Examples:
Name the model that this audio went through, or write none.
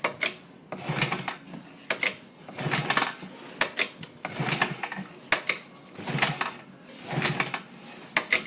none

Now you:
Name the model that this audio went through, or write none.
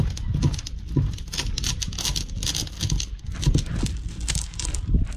none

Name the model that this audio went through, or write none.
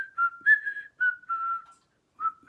none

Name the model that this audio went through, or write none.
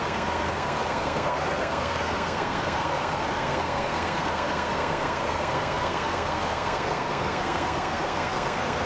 codec, SNAC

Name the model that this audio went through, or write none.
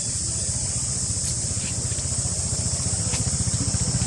none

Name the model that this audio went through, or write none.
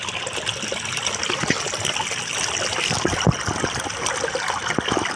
none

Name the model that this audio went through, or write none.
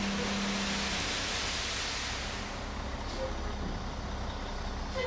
none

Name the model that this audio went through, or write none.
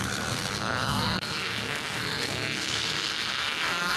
codec, SNAC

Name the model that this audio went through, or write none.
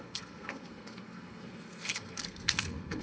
codec, SNAC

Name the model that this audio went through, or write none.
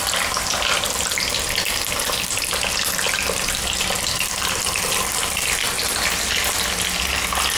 none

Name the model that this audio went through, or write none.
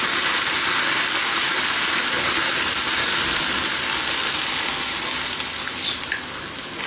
none